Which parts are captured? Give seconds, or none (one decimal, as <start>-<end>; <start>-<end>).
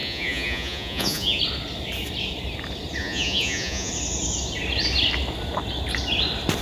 1.4-3.0; 3.9-6.6